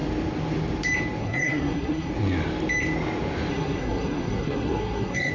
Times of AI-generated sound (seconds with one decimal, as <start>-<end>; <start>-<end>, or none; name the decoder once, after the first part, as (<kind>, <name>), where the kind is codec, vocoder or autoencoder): 1.2-2.1 (codec, SNAC); 3.5-5.3